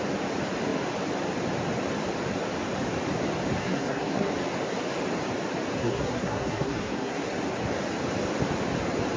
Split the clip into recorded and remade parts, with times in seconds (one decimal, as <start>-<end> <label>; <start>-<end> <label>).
0.0-3.6 recorded; 3.6-4.3 remade; 4.3-5.8 recorded; 5.8-7.2 remade; 7.2-9.2 recorded